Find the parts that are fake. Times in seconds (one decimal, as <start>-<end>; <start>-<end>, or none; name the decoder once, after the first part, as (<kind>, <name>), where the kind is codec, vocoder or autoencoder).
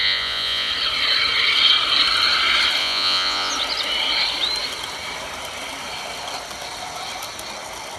0.0-0.7 (vocoder, Vocos); 2.8-3.5